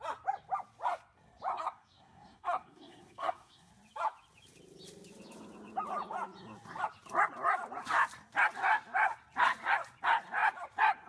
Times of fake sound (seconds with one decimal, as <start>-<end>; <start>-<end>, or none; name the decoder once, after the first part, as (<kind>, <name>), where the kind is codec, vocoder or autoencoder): 1.5-3.7 (codec, SNAC)